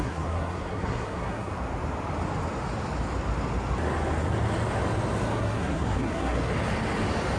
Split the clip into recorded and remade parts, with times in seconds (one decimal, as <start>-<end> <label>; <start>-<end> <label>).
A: 0.0-1.5 remade; 1.5-5.3 recorded; 5.3-6.5 remade; 6.5-7.4 recorded